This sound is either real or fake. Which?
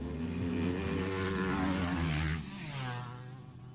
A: real